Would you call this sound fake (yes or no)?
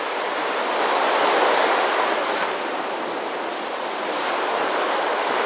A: no